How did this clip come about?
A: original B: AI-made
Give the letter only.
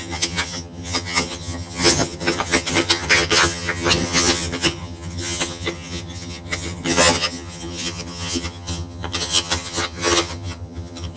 B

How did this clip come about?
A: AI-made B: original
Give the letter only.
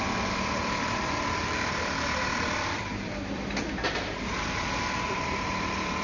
A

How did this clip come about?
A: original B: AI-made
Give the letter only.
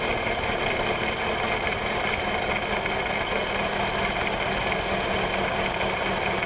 A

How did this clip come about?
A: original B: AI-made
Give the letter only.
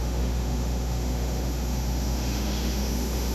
B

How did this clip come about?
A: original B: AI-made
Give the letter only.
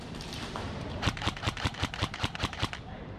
B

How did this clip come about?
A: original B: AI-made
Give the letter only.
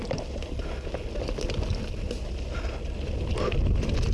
A